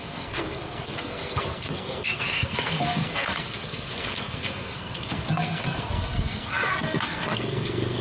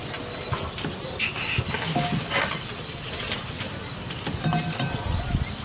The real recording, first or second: second